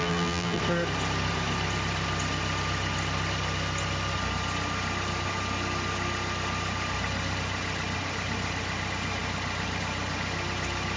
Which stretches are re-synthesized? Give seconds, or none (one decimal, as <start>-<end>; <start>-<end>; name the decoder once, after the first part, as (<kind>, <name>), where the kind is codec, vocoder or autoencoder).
0.0-0.6 (vocoder, BigVGAN v2)

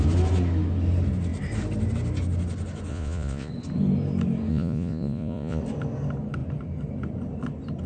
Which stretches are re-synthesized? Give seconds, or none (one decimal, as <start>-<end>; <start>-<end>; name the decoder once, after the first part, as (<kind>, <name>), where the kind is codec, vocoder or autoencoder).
2.9-3.5 (vocoder, Vocos); 4.5-5.6

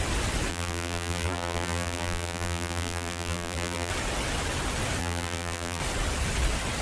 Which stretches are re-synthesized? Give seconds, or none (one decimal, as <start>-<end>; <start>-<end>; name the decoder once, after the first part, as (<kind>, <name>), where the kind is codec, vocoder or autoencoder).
0.5-3.9 (vocoder, BigVGAN v2); 5.0-5.8

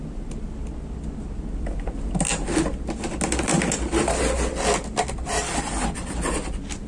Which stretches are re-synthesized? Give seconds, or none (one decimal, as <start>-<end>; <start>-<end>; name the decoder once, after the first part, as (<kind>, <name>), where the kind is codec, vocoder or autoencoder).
none

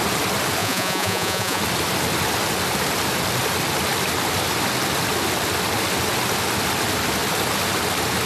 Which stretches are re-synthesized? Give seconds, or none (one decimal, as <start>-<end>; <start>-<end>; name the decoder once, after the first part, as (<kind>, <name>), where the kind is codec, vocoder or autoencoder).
0.6-1.6 (vocoder, Vocos)

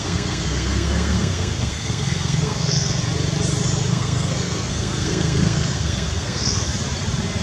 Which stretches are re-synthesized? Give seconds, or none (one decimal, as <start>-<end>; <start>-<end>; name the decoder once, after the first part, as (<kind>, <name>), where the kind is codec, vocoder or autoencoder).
0.0-3.0 (codec, SNAC); 3.9-6.7

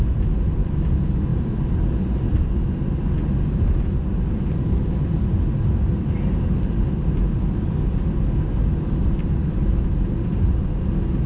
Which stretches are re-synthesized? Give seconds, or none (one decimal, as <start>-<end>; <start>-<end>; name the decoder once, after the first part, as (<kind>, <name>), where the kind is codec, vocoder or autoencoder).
none